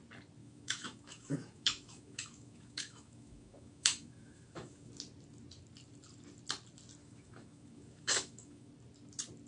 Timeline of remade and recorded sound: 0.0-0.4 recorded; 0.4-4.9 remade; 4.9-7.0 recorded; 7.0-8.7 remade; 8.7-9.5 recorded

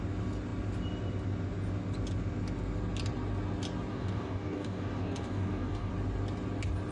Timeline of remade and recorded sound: 0.0-3.9 recorded; 3.9-5.9 remade; 5.9-6.9 recorded

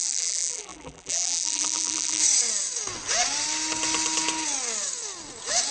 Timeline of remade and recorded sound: 0.0-2.2 remade; 2.2-5.7 recorded

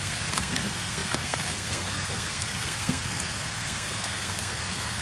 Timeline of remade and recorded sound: 0.0-5.0 remade

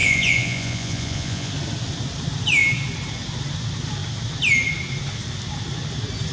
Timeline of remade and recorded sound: 0.0-1.5 remade; 1.5-6.3 recorded